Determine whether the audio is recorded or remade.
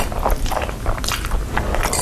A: recorded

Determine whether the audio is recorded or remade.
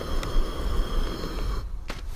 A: recorded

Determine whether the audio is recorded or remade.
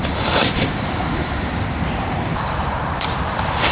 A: remade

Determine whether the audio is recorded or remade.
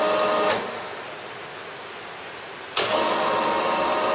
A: recorded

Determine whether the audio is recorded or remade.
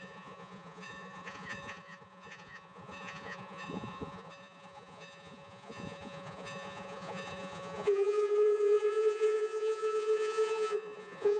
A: remade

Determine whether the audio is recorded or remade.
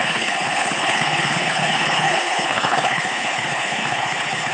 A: remade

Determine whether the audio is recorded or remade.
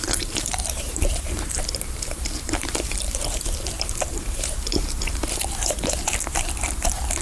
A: remade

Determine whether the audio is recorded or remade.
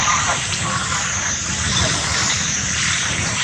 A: remade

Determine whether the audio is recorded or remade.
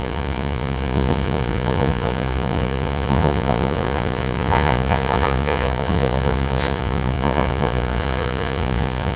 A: remade